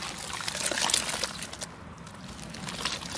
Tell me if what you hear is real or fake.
real